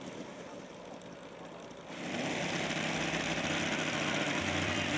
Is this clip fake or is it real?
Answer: fake